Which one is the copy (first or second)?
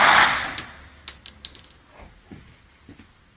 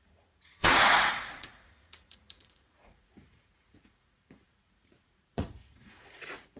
second